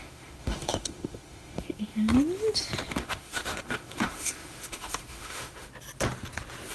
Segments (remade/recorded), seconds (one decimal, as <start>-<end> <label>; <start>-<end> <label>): 0.0-2.1 remade; 2.1-2.9 recorded; 2.9-5.7 remade; 5.7-6.7 recorded